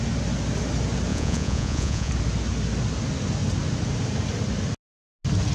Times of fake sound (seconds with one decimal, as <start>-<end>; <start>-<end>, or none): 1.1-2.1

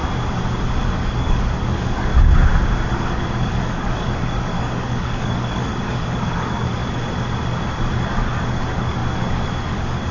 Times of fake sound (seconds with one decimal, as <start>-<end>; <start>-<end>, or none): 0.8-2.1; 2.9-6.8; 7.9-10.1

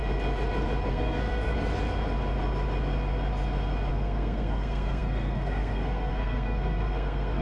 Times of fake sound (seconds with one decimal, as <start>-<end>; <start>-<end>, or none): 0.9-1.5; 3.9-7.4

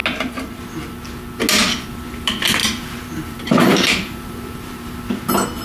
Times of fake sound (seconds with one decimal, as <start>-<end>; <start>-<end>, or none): 2.6-5.0